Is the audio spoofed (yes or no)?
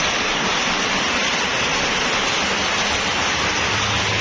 no